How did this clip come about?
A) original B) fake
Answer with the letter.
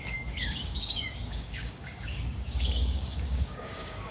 B